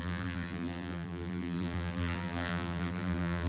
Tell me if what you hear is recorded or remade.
remade